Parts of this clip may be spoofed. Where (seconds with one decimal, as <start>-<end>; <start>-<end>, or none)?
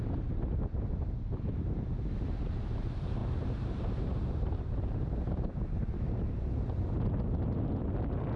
3.2-7.1